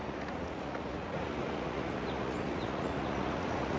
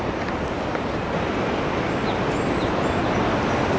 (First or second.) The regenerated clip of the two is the first